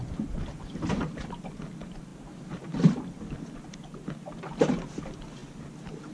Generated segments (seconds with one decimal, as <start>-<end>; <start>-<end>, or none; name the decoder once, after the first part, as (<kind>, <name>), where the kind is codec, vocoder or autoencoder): none

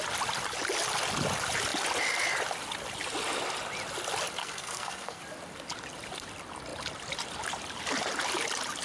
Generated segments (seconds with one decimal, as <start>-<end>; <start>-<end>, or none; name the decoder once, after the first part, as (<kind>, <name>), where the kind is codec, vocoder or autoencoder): 4.4-5.2 (codec, SNAC)

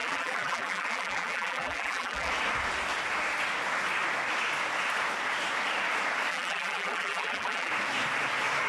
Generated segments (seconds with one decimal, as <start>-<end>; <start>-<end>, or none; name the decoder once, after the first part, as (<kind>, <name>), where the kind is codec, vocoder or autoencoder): 0.0-2.3 (vocoder, BigVGAN v2); 6.3-7.7